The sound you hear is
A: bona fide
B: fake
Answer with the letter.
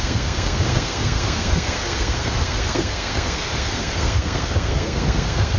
B